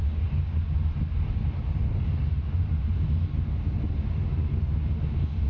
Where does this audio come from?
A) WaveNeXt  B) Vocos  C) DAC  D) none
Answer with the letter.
D